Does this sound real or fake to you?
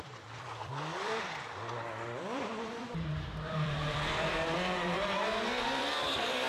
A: fake